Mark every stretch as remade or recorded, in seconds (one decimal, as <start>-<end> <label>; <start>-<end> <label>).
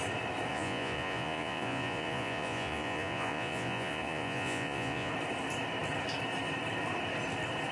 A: 0.0-0.5 recorded; 0.5-5.1 remade; 5.1-7.7 recorded